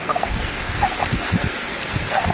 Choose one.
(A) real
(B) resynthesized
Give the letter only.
B